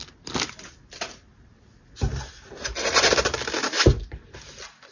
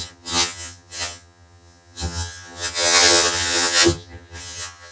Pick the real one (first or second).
first